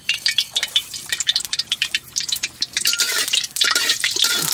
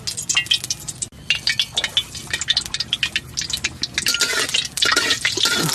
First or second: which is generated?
first